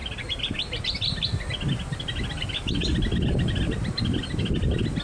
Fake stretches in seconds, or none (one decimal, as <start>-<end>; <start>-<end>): none